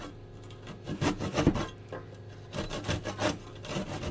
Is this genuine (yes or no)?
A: yes